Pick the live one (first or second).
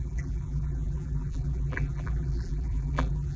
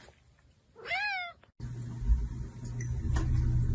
second